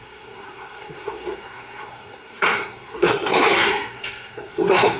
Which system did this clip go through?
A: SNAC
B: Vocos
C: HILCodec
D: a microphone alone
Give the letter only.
A